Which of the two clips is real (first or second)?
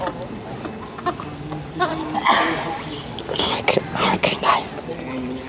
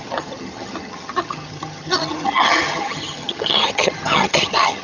first